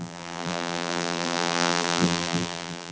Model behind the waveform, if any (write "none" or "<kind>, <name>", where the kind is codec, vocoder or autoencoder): vocoder, BigVGAN v2